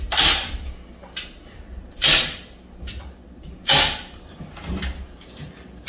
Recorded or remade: recorded